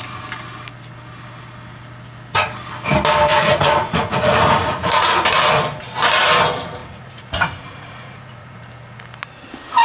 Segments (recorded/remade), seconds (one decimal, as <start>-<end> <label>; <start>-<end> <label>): 0.0-3.3 recorded; 3.3-5.2 remade; 5.2-6.8 recorded; 6.8-8.6 remade; 8.6-9.8 recorded